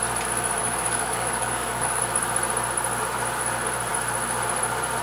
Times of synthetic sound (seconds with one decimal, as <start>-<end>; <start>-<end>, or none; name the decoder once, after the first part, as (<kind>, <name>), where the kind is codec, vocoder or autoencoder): 0.6-2.0 (codec, DAC)